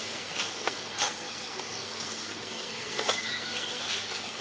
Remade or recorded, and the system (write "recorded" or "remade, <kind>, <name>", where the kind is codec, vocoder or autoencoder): remade, codec, SNAC